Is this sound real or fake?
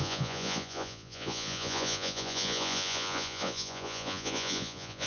fake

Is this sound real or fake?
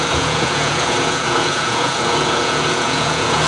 fake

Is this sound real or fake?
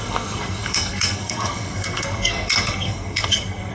fake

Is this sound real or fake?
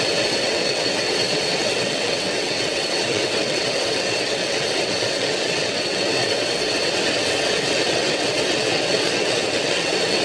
fake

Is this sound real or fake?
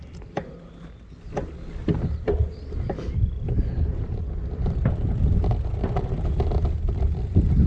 real